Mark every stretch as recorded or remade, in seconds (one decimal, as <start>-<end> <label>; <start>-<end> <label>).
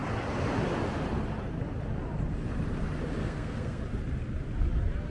0.0-3.2 recorded; 3.2-3.8 remade; 3.8-5.1 recorded